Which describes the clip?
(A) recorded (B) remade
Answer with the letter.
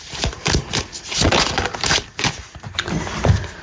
A